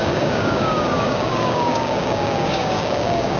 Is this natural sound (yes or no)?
no